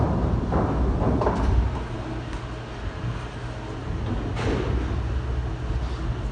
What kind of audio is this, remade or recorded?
recorded